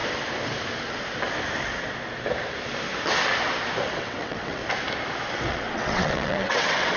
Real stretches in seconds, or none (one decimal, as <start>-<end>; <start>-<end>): 0.0-4.0; 4.6-5.3